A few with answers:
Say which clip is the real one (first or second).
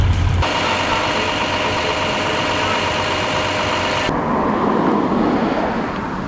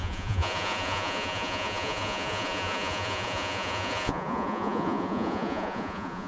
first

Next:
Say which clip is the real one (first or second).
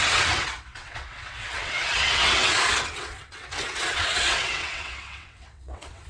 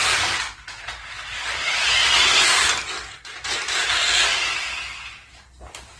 second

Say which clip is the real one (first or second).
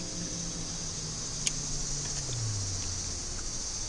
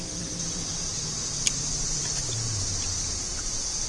first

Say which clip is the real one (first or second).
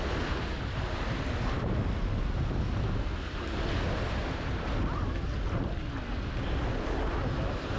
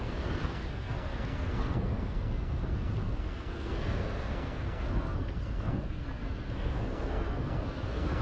first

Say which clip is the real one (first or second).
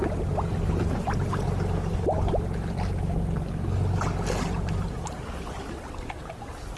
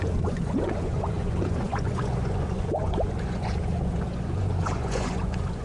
first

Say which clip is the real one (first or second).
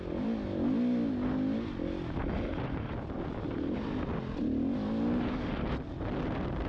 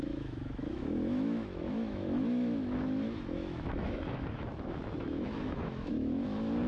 first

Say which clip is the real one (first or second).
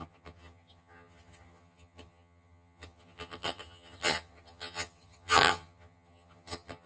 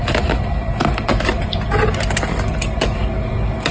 second